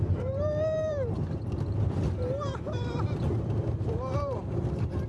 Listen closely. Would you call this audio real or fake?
fake